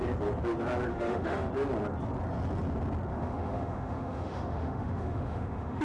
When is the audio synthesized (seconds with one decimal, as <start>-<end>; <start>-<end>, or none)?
0.9-1.5; 3.1-5.8